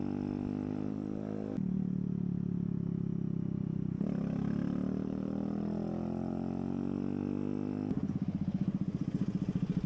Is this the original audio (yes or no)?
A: yes